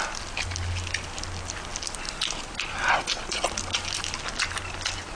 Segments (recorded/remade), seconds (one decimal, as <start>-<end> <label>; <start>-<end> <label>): 0.0-5.2 recorded